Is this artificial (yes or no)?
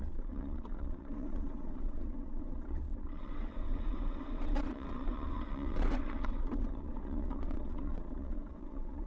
yes